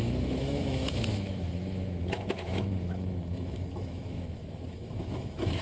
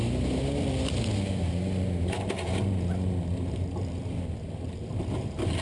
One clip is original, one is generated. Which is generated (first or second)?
first